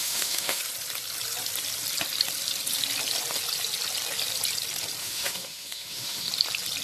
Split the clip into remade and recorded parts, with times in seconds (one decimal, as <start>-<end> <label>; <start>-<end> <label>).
0.0-0.6 remade; 0.6-5.0 recorded; 5.0-6.3 remade; 6.3-6.8 recorded